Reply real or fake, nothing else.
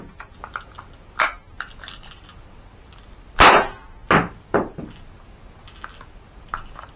real